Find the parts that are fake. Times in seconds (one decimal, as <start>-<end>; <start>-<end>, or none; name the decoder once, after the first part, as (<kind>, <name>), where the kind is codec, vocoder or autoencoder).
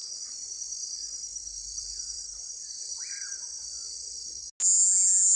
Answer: 0.0-0.5 (vocoder, BigVGAN v2); 1.3-4.5